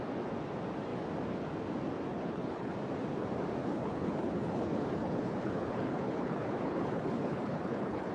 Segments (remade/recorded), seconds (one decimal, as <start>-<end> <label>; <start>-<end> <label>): 0.0-2.1 recorded; 2.1-2.7 remade; 2.7-3.6 recorded; 3.6-8.1 remade